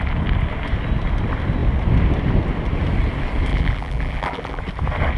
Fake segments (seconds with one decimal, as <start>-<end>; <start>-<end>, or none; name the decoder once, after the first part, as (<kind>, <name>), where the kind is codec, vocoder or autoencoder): 3.5-4.6 (vocoder, BigVGAN v2)